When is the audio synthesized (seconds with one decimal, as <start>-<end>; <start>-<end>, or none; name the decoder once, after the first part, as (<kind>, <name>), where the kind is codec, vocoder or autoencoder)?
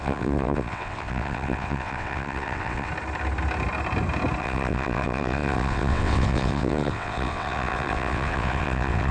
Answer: 0.0-2.9 (vocoder, WaveNeXt); 4.4-9.1